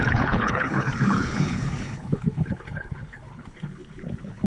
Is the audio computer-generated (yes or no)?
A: yes